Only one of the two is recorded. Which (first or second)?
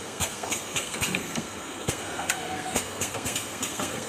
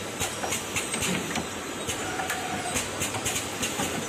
second